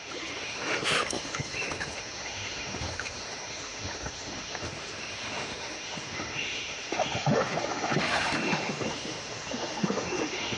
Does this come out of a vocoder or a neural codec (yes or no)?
yes